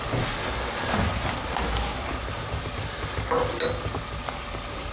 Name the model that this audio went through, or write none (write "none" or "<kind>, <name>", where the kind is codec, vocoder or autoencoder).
none